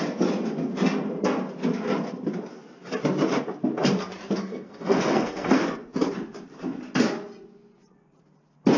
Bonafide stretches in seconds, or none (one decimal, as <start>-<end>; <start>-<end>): 0.0-4.4; 5.6-8.8